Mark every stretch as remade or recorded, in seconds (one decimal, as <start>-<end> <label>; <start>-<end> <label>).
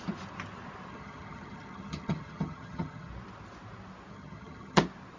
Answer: 0.0-0.9 recorded; 0.9-3.1 remade; 3.1-4.1 recorded; 4.1-4.8 remade; 4.8-5.2 recorded